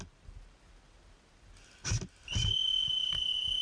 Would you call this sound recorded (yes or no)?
yes